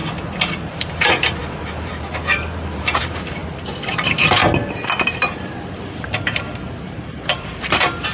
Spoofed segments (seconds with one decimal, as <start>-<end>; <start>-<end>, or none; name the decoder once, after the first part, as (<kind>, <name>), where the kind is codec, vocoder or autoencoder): 0.5-3.4 (vocoder, BigVGAN v2); 3.9-4.4; 5.2-8.1